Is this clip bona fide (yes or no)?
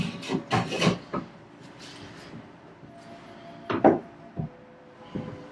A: yes